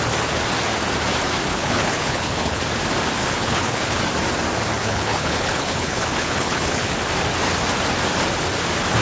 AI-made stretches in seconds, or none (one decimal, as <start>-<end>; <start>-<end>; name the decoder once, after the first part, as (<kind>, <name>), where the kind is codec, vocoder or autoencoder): 1.5-2.6 (codec, HILCodec); 3.2-4.0; 4.8-6.9